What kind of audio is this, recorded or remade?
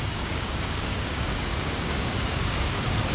remade